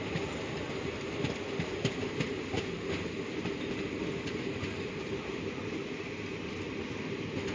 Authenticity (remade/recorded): recorded